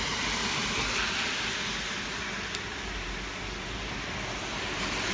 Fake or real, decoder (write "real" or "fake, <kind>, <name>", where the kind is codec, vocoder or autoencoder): real